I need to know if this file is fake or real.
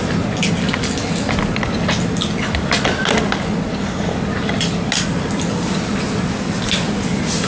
real